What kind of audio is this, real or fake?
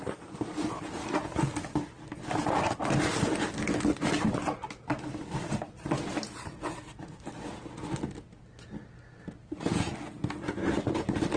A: real